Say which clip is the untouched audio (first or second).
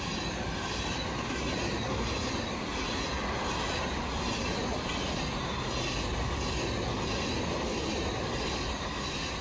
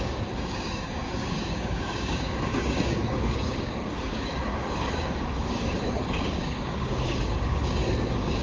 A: first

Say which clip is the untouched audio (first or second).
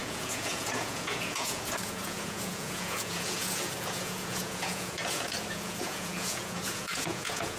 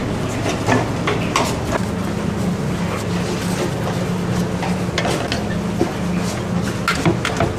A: second